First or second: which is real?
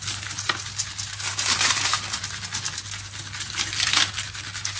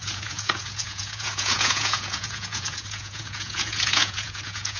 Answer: first